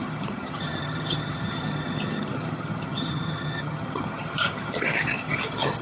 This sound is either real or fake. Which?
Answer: fake